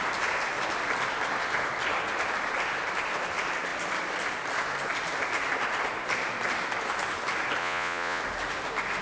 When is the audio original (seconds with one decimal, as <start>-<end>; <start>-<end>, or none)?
0.0-7.6; 8.2-9.0